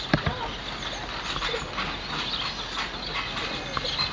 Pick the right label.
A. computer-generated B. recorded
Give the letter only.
B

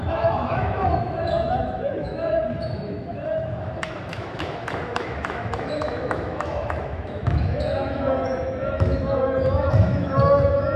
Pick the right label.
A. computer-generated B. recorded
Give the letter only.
A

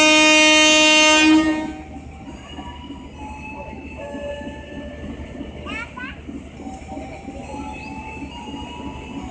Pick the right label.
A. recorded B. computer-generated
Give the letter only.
A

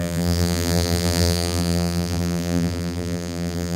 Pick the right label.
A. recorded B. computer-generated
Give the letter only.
B